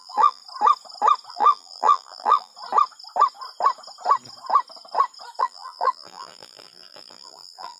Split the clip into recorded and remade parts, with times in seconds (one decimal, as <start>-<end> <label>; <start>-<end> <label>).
0.0-0.4 remade; 0.4-1.3 recorded; 1.3-2.5 remade; 2.5-5.4 recorded; 5.4-7.8 remade